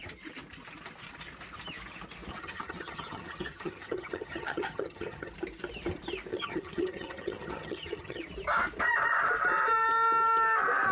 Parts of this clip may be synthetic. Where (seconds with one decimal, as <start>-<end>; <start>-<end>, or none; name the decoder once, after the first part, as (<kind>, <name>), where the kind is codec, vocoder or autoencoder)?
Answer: 2.3-5.3 (vocoder, HiFi-GAN); 6.3-8.2